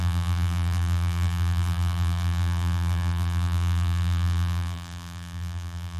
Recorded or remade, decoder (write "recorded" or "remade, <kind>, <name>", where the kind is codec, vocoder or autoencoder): remade, vocoder, BigVGAN v2